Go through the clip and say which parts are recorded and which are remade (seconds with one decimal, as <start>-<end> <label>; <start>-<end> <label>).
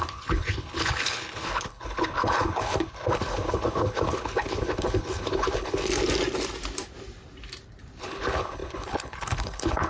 0.0-5.9 remade; 5.9-8.0 recorded; 8.0-9.9 remade